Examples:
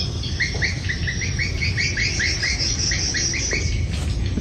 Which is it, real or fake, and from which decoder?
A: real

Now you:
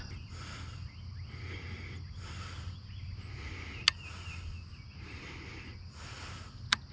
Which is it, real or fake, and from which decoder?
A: real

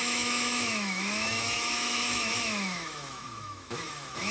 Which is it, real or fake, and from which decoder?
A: fake, autoencoder, DAC-VAE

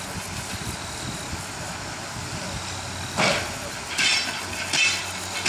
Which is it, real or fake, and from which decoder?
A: real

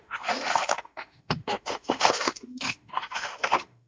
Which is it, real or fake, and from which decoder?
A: fake, autoencoder, DAC-VAE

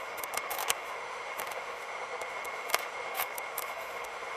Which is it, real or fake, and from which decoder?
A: fake, autoencoder, DAC-VAE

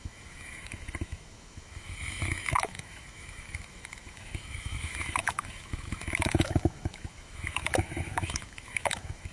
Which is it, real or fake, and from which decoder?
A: fake, autoencoder, DAC-VAE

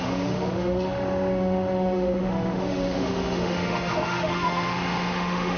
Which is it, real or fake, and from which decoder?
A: fake, autoencoder, DAC-VAE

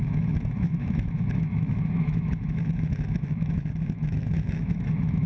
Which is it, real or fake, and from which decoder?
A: fake, autoencoder, DAC-VAE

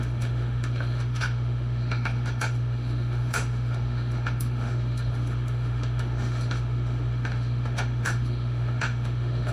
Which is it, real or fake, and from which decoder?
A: fake, autoencoder, DAC-VAE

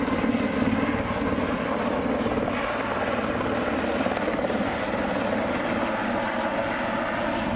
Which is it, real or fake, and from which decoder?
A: real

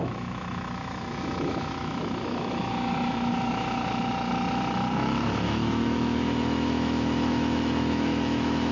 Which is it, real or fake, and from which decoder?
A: fake, autoencoder, DAC-VAE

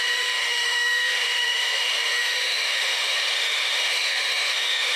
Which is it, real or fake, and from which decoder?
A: fake, autoencoder, DAC-VAE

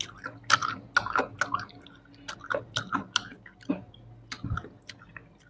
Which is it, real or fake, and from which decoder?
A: real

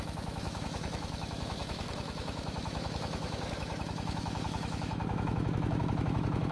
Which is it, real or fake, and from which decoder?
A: fake, autoencoder, DAC-VAE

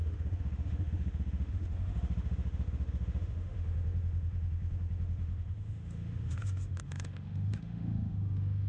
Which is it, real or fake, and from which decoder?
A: fake, autoencoder, DAC-VAE